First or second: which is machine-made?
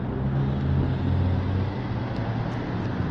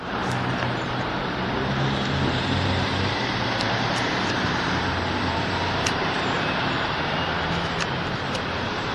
second